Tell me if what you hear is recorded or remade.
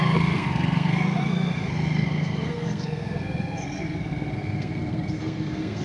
remade